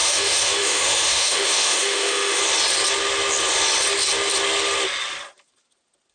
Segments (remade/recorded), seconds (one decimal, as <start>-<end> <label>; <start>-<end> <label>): 0.0-2.4 remade; 2.4-6.1 recorded